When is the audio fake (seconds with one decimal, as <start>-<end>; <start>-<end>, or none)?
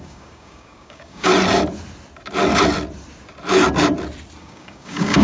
0.0-1.3; 4.4-5.2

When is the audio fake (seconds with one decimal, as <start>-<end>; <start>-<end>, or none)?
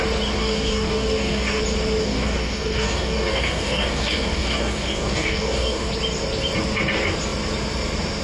0.4-1.6; 2.0-5.9